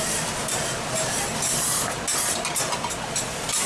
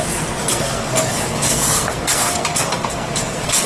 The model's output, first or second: second